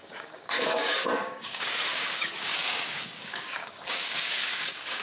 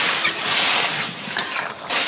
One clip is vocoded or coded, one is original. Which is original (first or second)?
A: second